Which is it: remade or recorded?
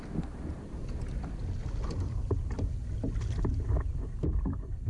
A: recorded